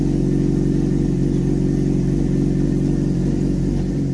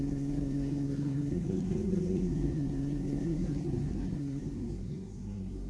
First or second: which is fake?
second